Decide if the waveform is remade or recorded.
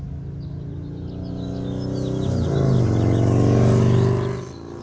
recorded